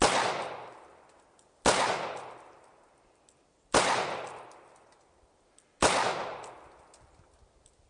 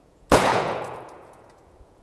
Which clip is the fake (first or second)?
second